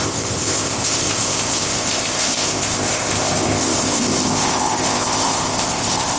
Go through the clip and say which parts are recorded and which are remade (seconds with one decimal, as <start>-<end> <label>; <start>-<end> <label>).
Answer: 0.0-6.2 remade